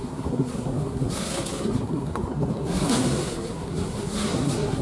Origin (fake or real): fake